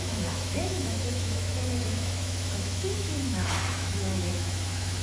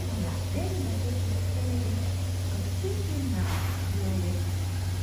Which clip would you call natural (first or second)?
second